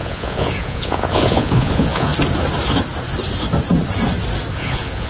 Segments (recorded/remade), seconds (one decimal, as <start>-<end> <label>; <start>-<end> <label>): 0.0-2.1 remade; 2.1-4.5 recorded; 4.5-5.1 remade